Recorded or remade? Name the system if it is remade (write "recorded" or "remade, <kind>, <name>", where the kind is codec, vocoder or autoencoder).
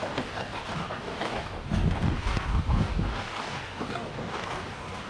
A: remade, codec, DAC